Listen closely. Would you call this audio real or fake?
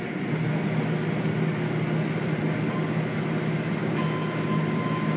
real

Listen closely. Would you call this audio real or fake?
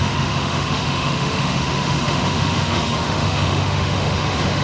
fake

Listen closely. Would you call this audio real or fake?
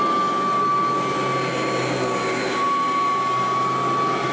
real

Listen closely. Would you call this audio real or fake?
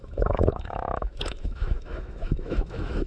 fake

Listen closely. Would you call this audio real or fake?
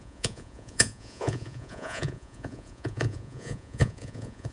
fake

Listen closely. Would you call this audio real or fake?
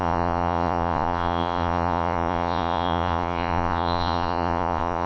fake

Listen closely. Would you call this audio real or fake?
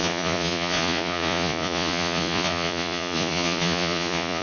fake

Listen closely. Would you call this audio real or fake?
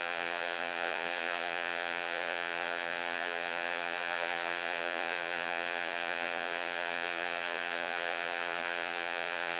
fake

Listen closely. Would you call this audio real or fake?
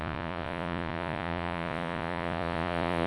fake